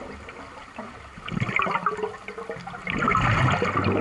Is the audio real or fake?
real